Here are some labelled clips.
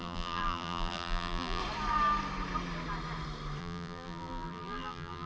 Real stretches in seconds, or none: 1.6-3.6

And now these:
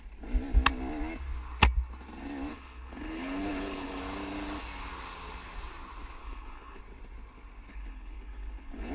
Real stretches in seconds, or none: 0.0-2.5; 4.0-6.2; 6.8-7.7